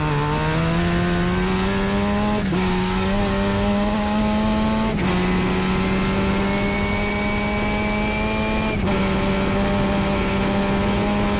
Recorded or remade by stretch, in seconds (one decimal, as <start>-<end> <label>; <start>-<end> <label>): 0.0-2.5 recorded; 2.5-4.2 remade; 4.2-11.4 recorded